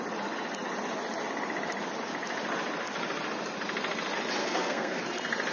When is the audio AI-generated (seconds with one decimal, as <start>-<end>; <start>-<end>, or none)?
4.4-5.0